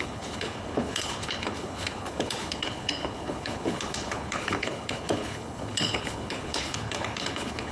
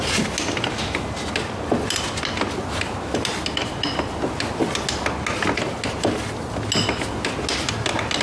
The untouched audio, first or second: second